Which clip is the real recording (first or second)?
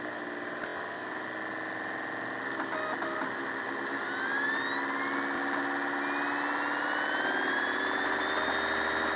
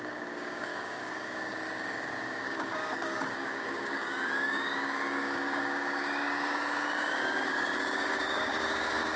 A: first